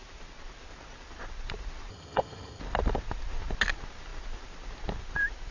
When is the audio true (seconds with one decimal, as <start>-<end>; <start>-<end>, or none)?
0.0-1.9; 2.6-5.5